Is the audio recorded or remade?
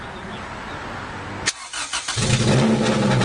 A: recorded